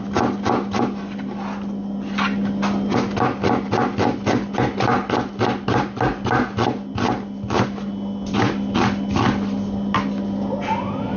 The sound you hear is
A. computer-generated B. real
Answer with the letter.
B